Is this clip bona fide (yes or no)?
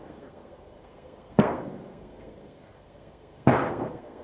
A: no